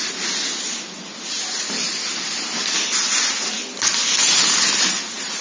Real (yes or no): yes